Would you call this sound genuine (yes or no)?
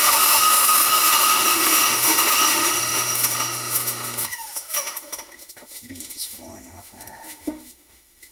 no